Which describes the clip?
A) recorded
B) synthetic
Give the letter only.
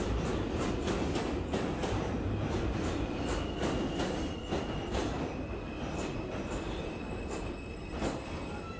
A